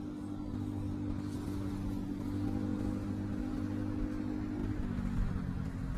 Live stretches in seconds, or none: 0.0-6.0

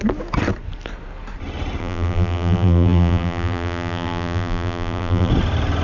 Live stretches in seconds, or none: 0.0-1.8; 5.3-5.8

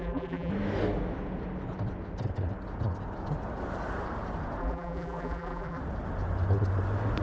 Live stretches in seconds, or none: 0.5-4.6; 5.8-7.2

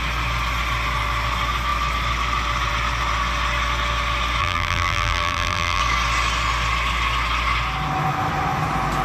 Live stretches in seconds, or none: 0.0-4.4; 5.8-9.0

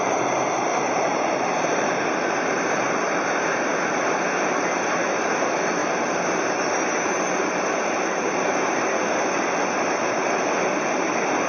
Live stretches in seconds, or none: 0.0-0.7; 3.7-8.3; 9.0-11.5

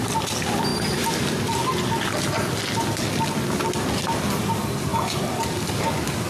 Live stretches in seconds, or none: 0.0-6.3